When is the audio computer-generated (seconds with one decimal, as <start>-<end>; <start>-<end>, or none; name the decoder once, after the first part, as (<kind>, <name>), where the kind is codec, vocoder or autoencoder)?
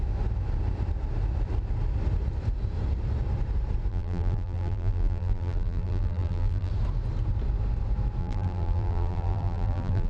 3.9-6.7 (vocoder, BigVGAN v2); 8.2-10.1